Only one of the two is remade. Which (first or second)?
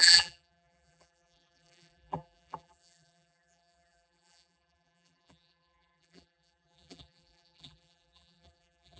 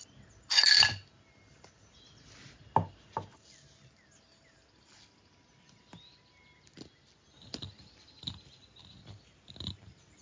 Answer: first